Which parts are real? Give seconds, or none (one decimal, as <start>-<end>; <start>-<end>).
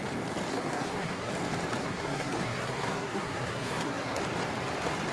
0.0-0.5; 1.3-1.8; 4.2-5.1